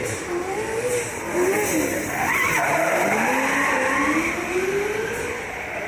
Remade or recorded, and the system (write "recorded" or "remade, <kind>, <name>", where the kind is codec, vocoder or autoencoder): recorded